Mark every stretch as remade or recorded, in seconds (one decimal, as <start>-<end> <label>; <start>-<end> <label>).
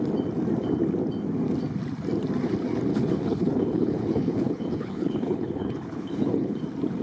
0.0-2.9 recorded; 2.9-6.6 remade; 6.6-7.0 recorded